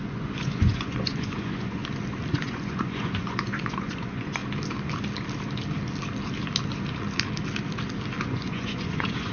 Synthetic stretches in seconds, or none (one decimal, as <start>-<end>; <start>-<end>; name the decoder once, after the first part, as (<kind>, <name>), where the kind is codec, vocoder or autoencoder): 0.0-1.8 (vocoder, Vocos); 2.3-4.4; 8.2-9.3